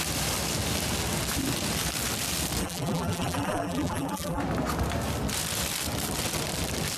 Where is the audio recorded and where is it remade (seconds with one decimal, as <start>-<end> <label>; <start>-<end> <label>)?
0.0-2.6 recorded; 2.6-4.4 remade; 4.4-7.0 recorded

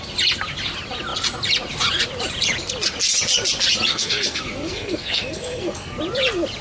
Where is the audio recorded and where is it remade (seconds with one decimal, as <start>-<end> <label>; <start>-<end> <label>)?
0.0-3.9 recorded; 3.9-6.0 remade; 6.0-6.6 recorded

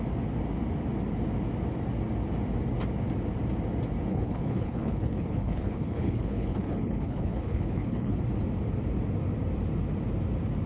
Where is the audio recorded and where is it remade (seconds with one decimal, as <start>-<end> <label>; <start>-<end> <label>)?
0.0-4.1 recorded; 4.1-8.2 remade; 8.2-10.7 recorded

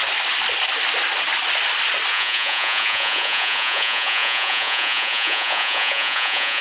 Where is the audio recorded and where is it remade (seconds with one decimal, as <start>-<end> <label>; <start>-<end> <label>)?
0.0-2.1 recorded; 2.1-6.6 remade

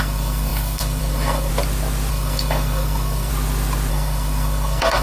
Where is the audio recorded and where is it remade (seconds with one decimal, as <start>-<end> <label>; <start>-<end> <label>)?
0.0-1.5 remade; 1.5-2.1 recorded; 2.1-3.3 remade; 3.3-3.9 recorded; 3.9-5.0 remade

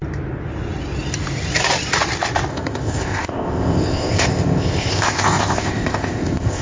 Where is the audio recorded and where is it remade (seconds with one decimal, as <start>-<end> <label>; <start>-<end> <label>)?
0.0-2.5 recorded; 2.5-6.6 remade

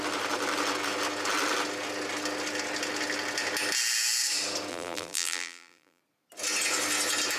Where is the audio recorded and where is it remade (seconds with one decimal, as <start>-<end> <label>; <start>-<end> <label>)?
0.0-4.7 recorded; 4.7-6.0 remade; 6.0-7.4 recorded

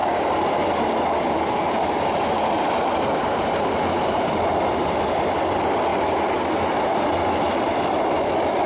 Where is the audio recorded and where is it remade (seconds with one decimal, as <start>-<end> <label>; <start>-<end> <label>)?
0.0-0.7 remade; 0.7-8.7 recorded